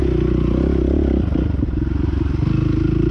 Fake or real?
real